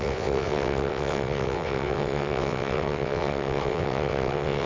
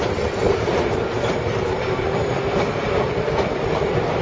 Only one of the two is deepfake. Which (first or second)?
first